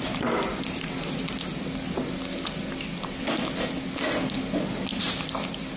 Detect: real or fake real